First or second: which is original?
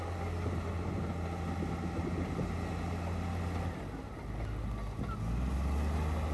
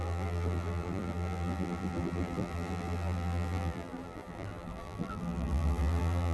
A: first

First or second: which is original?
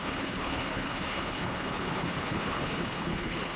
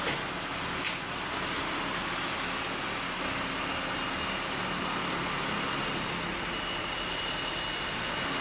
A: second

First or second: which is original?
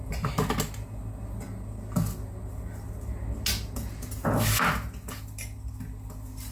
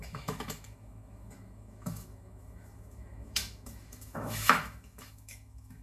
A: first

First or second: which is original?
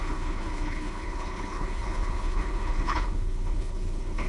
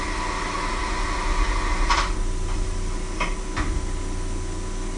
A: second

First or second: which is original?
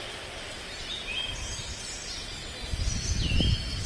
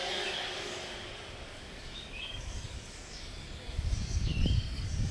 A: first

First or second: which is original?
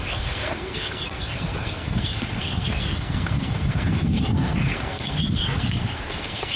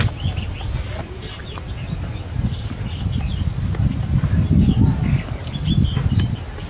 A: second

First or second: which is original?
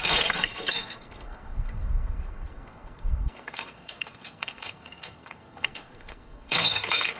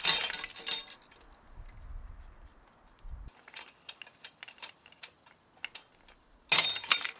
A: second